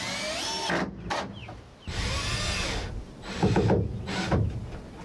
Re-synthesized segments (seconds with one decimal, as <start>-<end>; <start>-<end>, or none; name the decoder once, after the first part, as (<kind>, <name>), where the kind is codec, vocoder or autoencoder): none